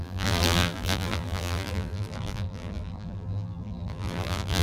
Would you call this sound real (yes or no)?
no